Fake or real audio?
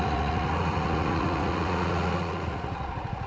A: fake